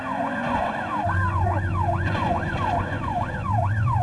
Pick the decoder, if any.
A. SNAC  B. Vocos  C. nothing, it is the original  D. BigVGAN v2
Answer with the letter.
B